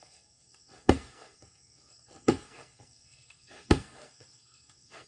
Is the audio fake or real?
fake